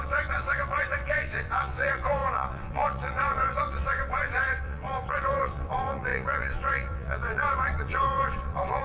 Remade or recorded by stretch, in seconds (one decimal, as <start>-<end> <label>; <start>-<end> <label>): 0.0-8.8 remade

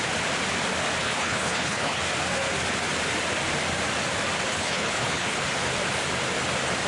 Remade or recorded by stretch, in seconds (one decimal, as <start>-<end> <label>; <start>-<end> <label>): 0.0-1.0 recorded; 1.0-2.0 remade; 2.0-4.5 recorded; 4.5-5.4 remade; 5.4-6.9 recorded

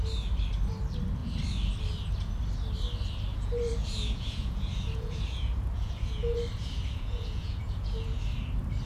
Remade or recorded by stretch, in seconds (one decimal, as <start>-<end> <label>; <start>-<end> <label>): 0.0-3.3 recorded; 3.3-8.2 remade; 8.2-8.9 recorded

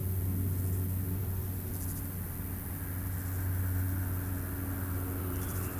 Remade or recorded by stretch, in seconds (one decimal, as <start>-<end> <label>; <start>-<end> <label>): 0.0-1.2 recorded; 1.2-1.7 remade; 1.7-5.2 recorded; 5.2-5.8 remade